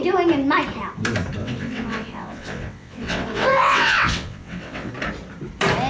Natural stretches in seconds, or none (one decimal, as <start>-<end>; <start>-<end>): 0.0-1.4; 4.9-5.9